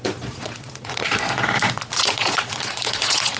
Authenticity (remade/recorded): remade